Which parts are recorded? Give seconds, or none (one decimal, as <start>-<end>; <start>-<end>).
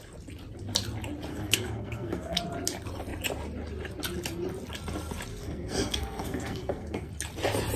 0.0-1.3; 2.4-5.3; 7.1-7.8